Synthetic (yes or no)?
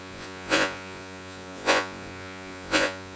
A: yes